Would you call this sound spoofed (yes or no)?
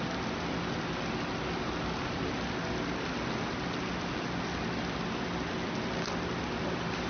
no